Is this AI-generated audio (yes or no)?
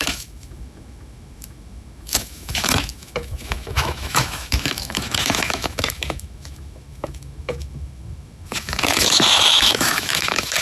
yes